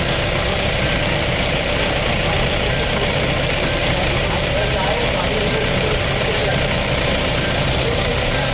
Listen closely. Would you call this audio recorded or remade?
remade